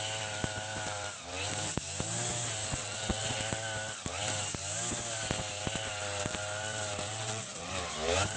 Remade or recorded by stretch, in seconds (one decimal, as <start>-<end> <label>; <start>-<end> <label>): 0.0-2.6 recorded; 2.6-3.4 remade; 3.4-7.1 recorded; 7.1-7.7 remade; 7.7-8.4 recorded